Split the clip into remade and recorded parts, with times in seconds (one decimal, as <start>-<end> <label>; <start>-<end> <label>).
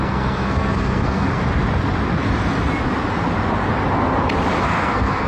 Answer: 0.0-1.4 remade; 1.4-4.6 recorded; 4.6-5.3 remade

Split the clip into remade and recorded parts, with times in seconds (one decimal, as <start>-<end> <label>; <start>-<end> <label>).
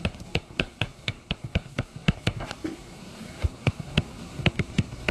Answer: 0.0-5.1 remade